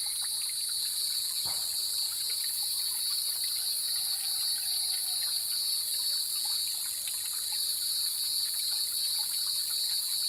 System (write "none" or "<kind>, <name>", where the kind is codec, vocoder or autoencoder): none